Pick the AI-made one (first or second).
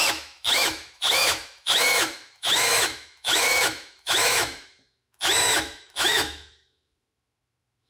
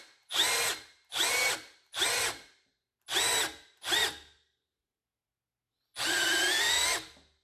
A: first